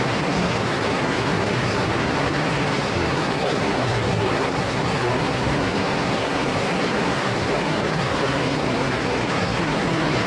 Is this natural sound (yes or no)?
no